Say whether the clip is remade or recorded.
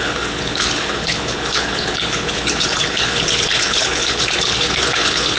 remade